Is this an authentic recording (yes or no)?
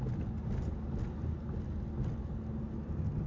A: yes